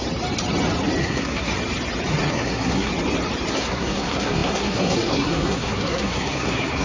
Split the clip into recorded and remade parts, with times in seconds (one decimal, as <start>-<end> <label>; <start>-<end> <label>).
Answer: 0.0-1.0 recorded; 1.0-1.5 remade; 1.5-2.3 recorded; 2.3-2.9 remade; 2.9-3.5 recorded; 3.5-6.8 remade